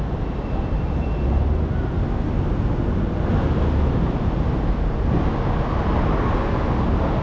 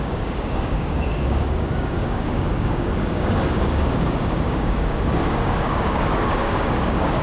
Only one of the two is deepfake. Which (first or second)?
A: second